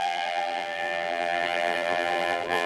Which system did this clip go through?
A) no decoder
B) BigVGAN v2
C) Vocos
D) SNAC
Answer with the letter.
B